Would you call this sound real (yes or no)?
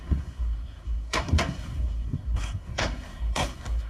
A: no